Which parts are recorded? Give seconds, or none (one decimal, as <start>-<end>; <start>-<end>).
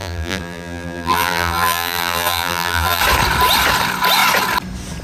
3.0-5.0